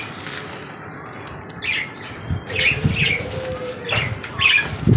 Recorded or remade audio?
recorded